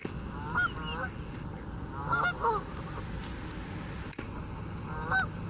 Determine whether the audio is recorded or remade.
recorded